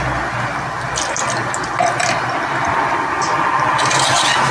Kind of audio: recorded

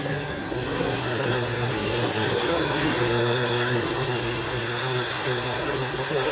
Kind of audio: remade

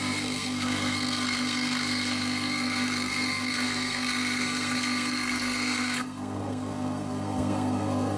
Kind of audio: remade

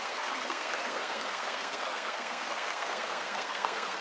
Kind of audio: remade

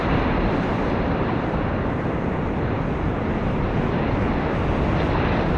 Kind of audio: recorded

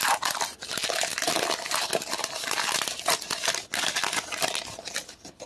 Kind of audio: recorded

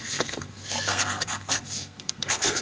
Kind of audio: remade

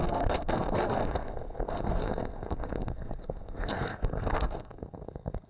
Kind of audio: remade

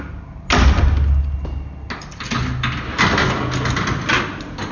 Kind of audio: recorded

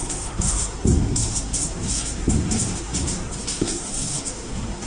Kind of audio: remade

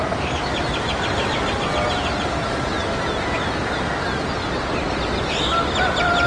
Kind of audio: recorded